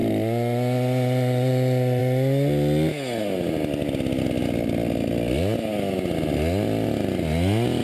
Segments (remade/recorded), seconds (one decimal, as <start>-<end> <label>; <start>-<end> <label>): 0.0-7.8 recorded